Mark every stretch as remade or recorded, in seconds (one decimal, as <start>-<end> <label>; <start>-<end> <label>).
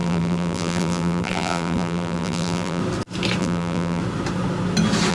0.0-2.8 remade; 2.8-3.4 recorded; 3.4-4.0 remade; 4.0-5.1 recorded